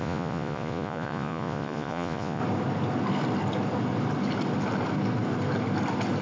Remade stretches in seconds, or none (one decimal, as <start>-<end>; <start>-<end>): 0.0-2.4